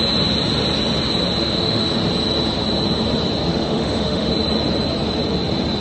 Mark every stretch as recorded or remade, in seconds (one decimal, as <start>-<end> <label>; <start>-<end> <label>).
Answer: 0.0-1.4 recorded; 1.4-1.9 remade; 1.9-3.5 recorded; 3.5-4.3 remade; 4.3-5.8 recorded

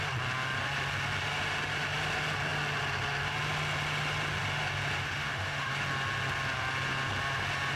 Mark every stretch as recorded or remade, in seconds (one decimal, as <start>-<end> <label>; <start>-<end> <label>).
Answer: 0.0-5.0 recorded; 5.0-5.7 remade; 5.7-7.8 recorded